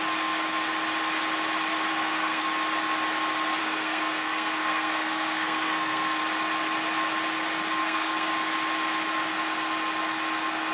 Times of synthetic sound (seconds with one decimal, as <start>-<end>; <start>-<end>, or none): 1.9-2.4; 3.6-6.2; 7.8-8.3